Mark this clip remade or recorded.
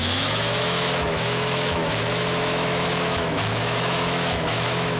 remade